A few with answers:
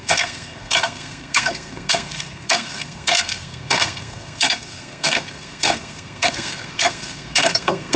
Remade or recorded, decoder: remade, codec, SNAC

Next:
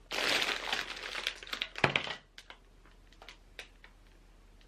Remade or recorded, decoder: recorded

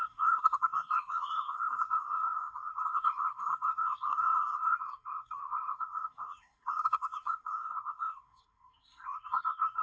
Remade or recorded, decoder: remade, codec, SNAC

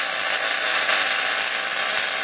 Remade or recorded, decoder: recorded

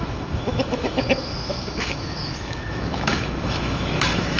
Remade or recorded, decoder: remade, autoencoder, DAC-VAE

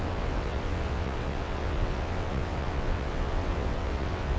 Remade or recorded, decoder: remade, vocoder, WaveNeXt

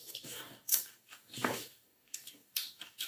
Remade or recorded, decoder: remade, codec, DAC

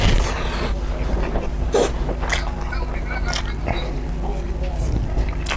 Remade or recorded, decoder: recorded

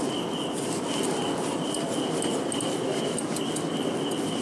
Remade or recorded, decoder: recorded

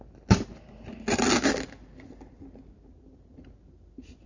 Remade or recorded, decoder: recorded